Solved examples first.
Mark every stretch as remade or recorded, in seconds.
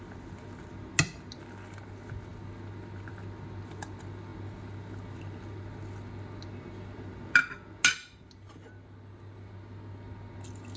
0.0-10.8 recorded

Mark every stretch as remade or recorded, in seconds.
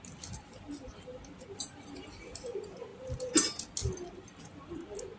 0.0-5.2 recorded